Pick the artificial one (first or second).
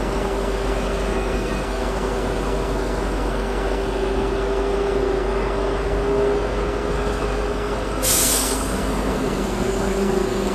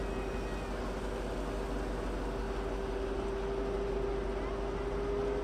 first